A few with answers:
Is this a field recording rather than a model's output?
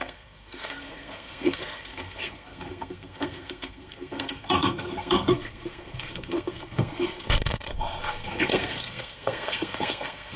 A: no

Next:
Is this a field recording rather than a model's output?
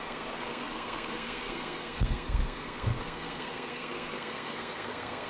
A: no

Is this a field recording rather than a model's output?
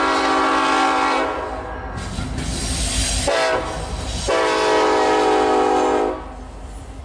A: yes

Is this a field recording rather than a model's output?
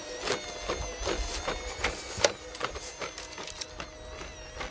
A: yes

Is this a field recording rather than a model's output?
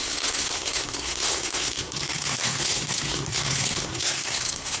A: no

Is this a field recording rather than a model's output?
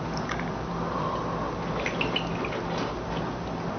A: yes